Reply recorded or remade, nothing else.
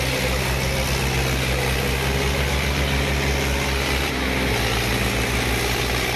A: recorded